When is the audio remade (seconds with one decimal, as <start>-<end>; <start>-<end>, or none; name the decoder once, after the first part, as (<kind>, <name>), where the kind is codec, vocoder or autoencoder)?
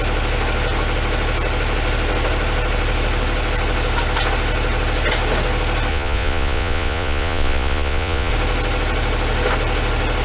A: 5.9-8.3 (vocoder, Vocos)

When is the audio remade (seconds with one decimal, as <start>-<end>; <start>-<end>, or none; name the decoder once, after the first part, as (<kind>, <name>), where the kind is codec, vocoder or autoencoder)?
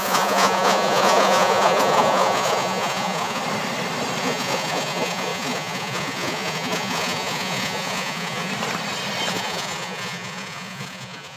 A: 0.0-3.4 (vocoder, Vocos); 4.2-8.5; 9.3-11.4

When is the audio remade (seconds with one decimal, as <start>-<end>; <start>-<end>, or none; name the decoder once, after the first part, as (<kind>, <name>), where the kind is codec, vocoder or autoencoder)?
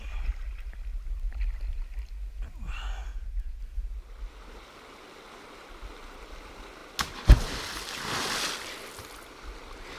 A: 3.1-3.6 (vocoder, Vocos)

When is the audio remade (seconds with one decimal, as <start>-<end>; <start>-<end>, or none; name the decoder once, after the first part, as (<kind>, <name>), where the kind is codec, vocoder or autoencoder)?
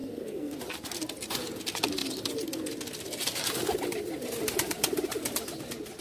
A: 0.0-0.6 (codec, SNAC)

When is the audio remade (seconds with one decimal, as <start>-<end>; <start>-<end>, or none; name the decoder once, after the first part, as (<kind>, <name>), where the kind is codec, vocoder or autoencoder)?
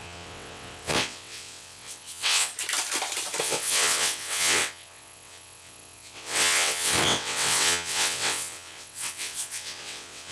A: 0.0-2.5 (vocoder, WaveNeXt); 3.4-10.3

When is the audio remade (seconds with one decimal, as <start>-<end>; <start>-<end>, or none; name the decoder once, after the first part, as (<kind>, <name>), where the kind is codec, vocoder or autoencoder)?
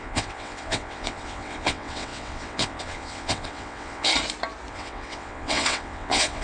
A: 0.0-4.1 (vocoder, WaveNeXt); 4.7-6.4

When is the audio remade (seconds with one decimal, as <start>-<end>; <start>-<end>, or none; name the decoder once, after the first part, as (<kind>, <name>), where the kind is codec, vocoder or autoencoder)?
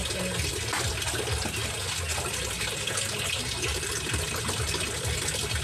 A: none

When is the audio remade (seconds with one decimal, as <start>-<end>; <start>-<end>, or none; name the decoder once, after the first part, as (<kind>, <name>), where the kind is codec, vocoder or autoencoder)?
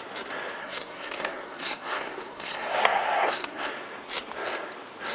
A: 0.6-3.7 (codec, SNAC)